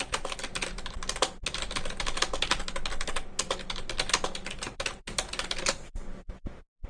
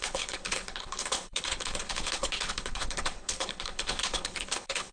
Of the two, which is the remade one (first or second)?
second